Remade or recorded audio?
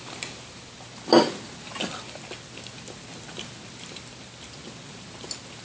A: recorded